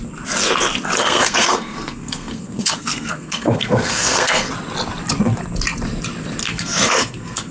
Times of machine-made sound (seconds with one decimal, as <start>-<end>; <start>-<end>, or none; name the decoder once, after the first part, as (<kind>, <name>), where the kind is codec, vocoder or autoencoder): 1.0-4.5 (codec, SNAC); 6.4-7.5